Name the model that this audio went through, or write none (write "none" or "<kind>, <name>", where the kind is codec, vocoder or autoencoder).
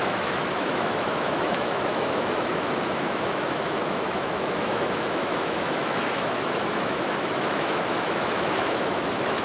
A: autoencoder, DAC-VAE